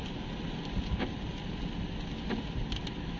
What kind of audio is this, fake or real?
real